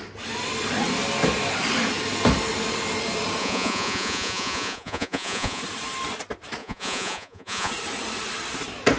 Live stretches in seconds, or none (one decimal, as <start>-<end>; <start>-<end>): 0.0-3.4; 5.6-6.6; 7.7-9.0